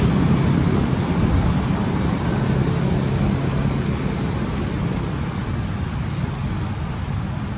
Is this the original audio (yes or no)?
yes